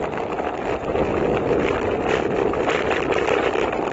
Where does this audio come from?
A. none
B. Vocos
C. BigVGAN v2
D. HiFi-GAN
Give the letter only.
A